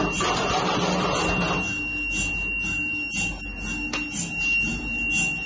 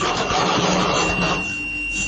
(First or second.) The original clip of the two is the first